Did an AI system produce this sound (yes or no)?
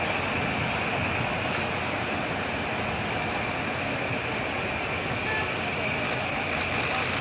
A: no